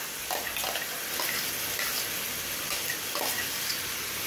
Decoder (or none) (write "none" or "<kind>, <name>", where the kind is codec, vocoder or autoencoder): none